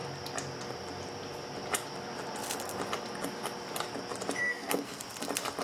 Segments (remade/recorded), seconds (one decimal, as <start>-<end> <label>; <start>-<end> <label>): 0.0-4.4 recorded; 4.4-5.0 remade; 5.0-5.6 recorded